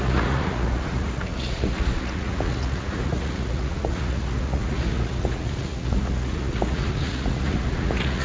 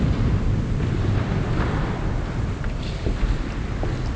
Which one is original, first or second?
second